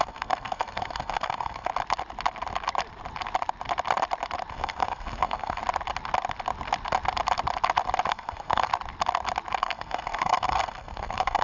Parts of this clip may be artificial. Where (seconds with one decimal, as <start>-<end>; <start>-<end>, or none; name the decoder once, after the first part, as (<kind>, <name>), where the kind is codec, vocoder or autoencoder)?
0.0-1.7 (codec, SNAC); 4.5-5.6; 8.1-8.7; 9.6-11.4